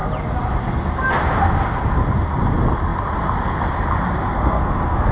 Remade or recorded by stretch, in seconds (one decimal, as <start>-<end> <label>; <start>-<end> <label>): 0.0-4.3 recorded; 4.3-5.1 remade